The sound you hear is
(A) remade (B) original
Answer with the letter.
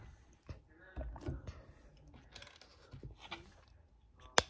B